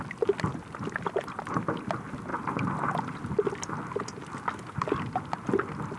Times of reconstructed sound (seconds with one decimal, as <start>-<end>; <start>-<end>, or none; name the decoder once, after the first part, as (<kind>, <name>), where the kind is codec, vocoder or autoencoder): none